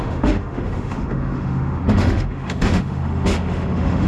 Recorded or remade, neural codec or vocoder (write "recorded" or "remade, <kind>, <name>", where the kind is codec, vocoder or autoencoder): remade, autoencoder, DAC-VAE